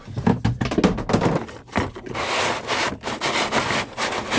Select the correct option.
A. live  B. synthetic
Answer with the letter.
A